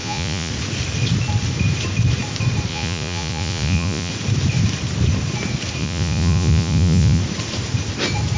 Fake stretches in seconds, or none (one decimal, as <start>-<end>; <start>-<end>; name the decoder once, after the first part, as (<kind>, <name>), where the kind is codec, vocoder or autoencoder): 0.0-0.5 (vocoder, Vocos); 2.7-4.1; 5.8-7.2